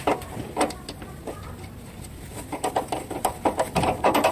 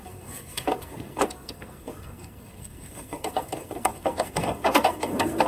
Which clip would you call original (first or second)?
first